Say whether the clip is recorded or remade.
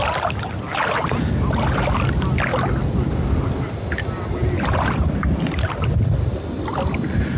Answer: recorded